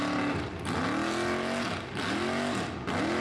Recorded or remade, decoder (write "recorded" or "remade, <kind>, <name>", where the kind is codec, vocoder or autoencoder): recorded